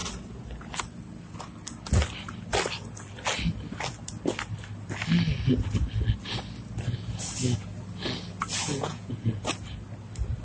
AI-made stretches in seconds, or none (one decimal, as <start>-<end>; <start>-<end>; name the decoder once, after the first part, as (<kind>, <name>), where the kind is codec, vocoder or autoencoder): 8.7-9.4 (vocoder, Vocos)